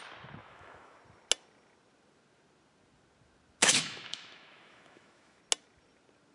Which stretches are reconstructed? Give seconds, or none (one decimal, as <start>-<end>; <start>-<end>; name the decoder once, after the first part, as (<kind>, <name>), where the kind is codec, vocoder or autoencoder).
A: 0.4-1.0 (autoencoder, DAC-VAE); 3.6-5.4